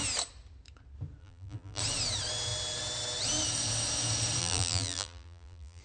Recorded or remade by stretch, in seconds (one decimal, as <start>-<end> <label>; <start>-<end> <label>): 0.0-1.2 recorded; 1.2-1.8 remade; 1.8-4.4 recorded; 4.4-5.8 remade